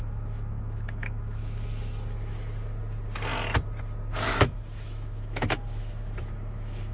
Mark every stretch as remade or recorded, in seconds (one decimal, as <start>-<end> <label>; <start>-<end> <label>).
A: 0.0-1.4 remade; 1.4-4.1 recorded; 4.1-6.9 remade